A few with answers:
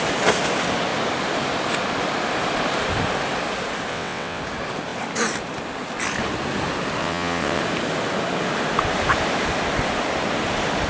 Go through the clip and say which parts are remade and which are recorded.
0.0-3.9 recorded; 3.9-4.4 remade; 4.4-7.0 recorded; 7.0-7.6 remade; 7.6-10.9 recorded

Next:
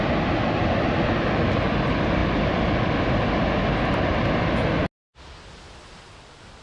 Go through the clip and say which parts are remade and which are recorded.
0.0-6.6 recorded